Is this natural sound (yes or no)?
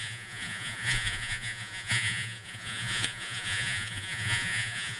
no